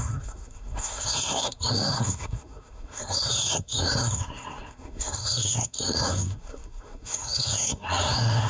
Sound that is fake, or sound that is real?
fake